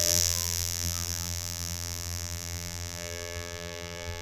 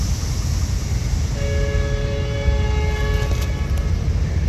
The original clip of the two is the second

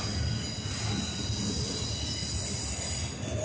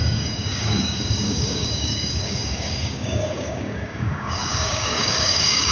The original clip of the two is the first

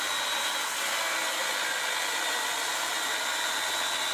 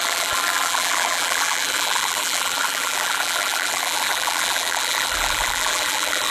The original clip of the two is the first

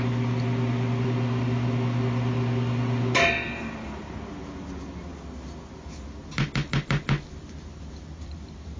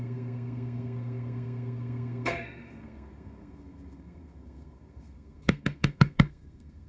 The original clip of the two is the first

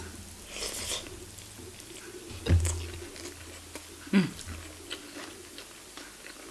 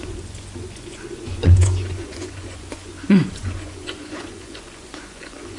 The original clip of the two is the first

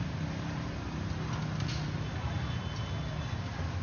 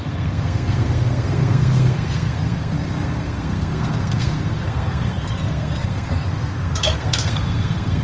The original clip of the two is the first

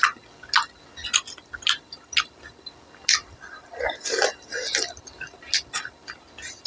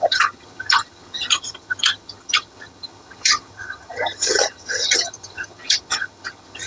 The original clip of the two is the first